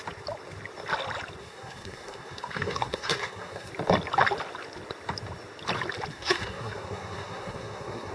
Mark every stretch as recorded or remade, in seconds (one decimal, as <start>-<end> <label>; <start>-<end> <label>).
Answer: 0.0-1.4 recorded; 1.4-3.7 remade; 3.7-6.1 recorded; 6.1-8.1 remade